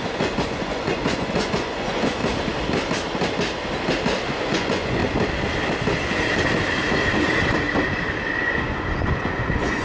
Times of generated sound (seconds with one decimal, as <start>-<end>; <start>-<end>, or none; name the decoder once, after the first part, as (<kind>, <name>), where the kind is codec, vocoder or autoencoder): 0.0-2.2 (vocoder, Vocos); 4.3-5.0; 8.4-9.8